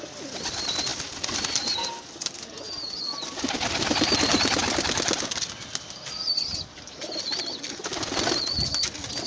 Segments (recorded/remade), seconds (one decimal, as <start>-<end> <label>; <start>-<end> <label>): 0.0-4.6 recorded; 4.6-6.1 remade; 6.1-9.3 recorded